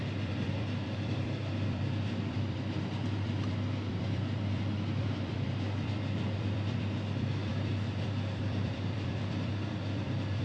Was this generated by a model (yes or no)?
yes